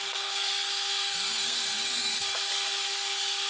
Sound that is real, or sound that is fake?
fake